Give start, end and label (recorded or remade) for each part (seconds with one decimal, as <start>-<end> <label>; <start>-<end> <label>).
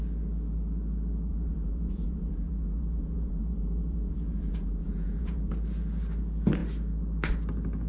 0.0-1.3 recorded; 1.3-5.5 remade; 5.5-7.9 recorded